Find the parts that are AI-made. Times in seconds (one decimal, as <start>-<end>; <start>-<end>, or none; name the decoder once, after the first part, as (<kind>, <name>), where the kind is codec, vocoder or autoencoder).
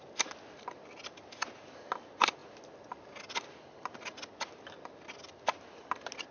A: none